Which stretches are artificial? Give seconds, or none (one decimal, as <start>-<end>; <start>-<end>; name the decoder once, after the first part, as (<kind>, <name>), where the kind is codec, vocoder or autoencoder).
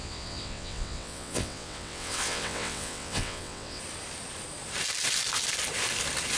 0.0-3.8 (vocoder, WaveNeXt)